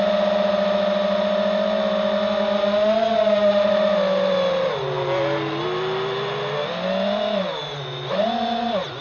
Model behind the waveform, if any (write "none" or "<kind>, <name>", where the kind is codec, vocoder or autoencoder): none